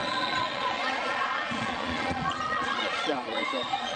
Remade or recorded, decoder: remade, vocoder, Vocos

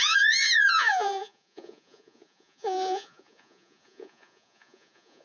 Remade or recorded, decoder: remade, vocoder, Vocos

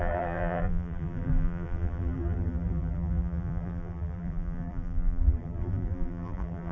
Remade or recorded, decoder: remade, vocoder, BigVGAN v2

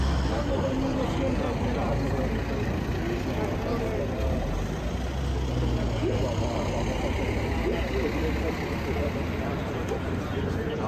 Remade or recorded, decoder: recorded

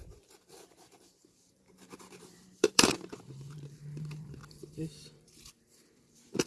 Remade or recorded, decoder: remade, vocoder, BigVGAN v2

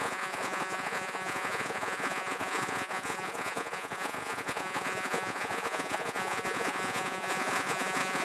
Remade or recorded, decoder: remade, vocoder, Vocos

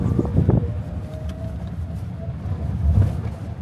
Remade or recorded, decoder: recorded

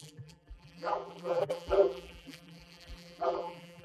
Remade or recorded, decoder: remade, vocoder, BigVGAN v2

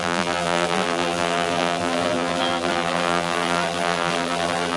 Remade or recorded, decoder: remade, vocoder, BigVGAN v2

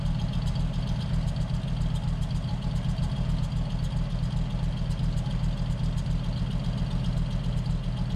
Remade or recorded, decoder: recorded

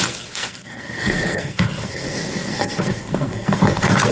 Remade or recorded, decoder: remade, codec, SNAC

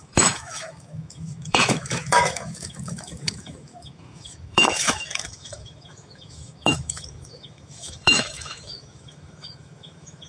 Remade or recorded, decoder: remade, autoencoder, DAC-VAE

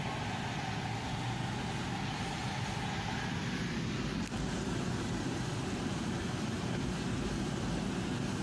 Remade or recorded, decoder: recorded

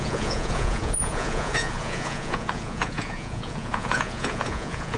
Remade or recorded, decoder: remade, vocoder, Vocos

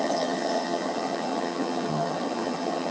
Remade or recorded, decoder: remade, vocoder, HiFi-GAN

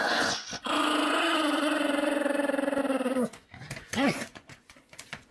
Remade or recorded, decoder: remade, vocoder, Vocos